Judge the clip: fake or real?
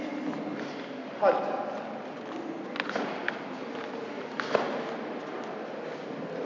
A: real